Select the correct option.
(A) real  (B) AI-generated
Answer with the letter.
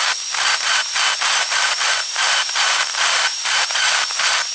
B